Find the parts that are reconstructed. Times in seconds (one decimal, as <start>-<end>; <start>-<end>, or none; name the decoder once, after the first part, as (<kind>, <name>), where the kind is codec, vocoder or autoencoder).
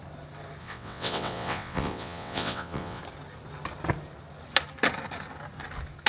0.6-3.0 (vocoder, WaveNeXt)